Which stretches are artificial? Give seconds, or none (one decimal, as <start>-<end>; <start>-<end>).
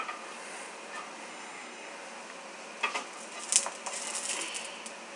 1.3-1.9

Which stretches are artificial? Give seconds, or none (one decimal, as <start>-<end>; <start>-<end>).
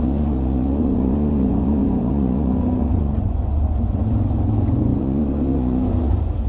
0.0-6.5